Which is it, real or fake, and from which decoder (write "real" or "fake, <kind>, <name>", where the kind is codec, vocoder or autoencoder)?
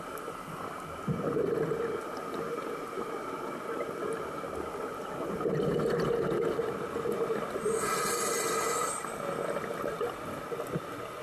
real